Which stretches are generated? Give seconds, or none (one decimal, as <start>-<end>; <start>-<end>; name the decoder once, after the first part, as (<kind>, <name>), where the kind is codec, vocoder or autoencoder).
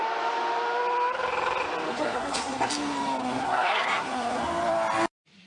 1.9-2.7 (codec, SNAC); 3.2-4.4